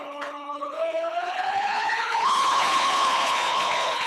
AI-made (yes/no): yes